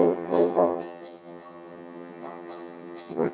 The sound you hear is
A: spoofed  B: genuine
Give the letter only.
A